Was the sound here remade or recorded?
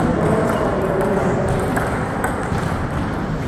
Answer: recorded